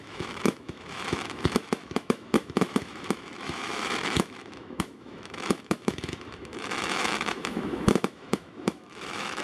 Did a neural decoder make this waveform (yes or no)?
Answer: yes